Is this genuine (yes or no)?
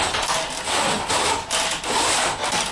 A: yes